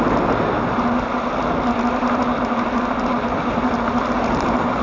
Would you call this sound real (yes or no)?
yes